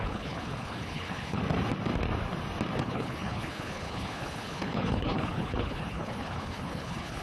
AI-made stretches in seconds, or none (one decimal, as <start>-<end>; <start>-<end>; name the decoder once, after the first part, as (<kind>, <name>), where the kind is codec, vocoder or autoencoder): 0.0-1.4 (codec, HILCodec); 2.8-7.2